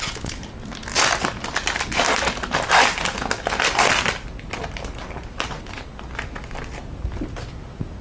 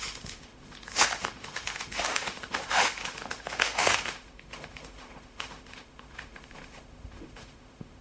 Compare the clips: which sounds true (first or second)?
first